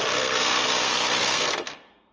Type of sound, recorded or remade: remade